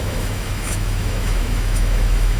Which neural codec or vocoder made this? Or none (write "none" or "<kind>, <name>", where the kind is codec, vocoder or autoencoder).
autoencoder, DAC-VAE